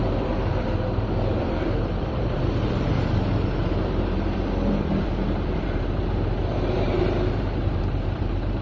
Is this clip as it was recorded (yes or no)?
no